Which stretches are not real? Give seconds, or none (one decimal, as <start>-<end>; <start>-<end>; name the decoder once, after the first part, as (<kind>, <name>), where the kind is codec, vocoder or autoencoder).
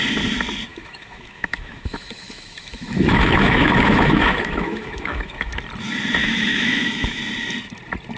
0.7-5.5 (autoencoder, DAC-VAE); 6.2-7.2